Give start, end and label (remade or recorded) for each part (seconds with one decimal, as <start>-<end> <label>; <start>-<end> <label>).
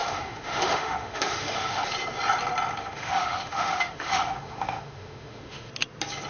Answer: 0.0-1.8 remade; 1.8-2.8 recorded; 2.8-5.7 remade; 5.7-6.3 recorded